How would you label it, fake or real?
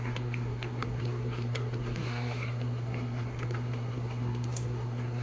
fake